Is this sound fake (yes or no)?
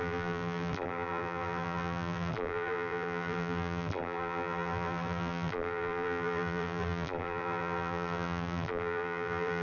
yes